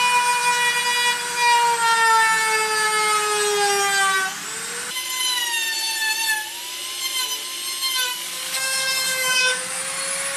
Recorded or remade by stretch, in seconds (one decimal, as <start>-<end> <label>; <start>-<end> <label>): 0.0-8.1 recorded; 8.1-9.8 remade; 9.8-10.4 recorded